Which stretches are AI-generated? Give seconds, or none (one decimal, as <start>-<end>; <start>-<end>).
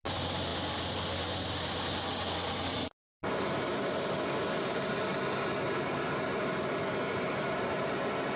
none